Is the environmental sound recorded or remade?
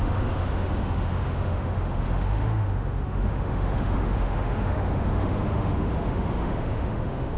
remade